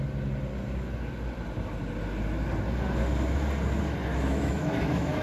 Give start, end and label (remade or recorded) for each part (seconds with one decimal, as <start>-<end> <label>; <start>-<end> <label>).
0.0-4.1 recorded; 4.1-5.2 remade